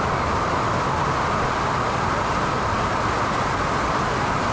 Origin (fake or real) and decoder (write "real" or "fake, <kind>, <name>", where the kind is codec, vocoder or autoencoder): real